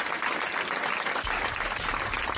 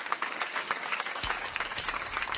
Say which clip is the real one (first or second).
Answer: first